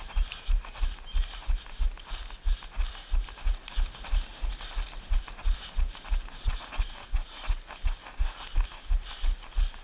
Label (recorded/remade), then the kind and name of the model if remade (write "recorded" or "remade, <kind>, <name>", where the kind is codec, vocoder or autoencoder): recorded